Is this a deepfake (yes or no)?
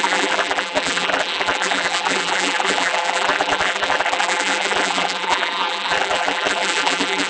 yes